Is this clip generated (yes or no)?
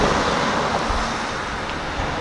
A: no